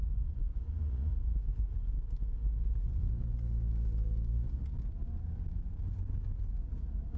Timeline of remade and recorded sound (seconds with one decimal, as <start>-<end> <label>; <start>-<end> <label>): 0.0-1.1 remade; 1.1-2.3 recorded; 2.3-3.1 remade; 3.1-7.2 recorded